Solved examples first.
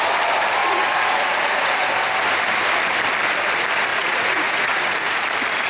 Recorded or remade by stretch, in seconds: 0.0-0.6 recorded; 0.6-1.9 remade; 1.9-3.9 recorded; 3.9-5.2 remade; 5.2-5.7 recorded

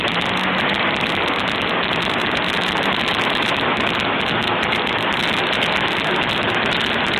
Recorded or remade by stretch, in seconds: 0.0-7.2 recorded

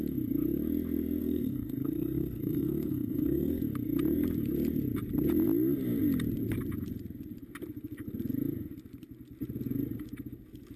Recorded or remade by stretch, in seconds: 0.0-1.2 recorded; 1.2-3.6 remade; 3.6-10.8 recorded